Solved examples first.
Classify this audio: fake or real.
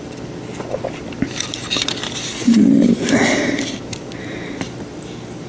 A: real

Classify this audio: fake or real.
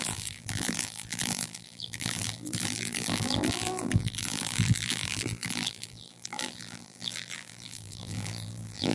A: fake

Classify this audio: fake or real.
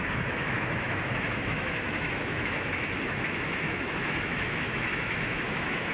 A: fake